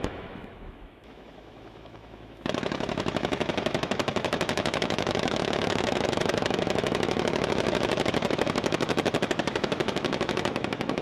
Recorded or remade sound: remade